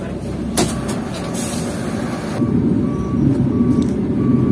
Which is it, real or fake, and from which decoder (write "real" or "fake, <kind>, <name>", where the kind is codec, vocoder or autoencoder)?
real